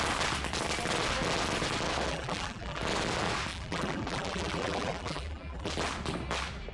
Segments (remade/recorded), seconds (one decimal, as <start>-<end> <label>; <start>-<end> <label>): 0.0-2.1 recorded; 2.1-2.8 remade; 2.8-3.5 recorded; 3.5-5.7 remade; 5.7-6.7 recorded